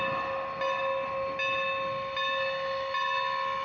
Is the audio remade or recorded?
recorded